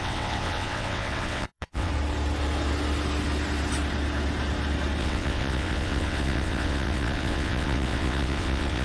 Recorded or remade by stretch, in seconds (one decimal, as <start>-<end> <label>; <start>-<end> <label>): 0.0-1.9 remade; 1.9-5.0 recorded; 5.0-8.8 remade